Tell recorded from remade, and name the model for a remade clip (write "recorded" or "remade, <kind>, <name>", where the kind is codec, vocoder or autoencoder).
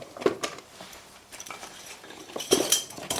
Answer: remade, vocoder, BigVGAN v2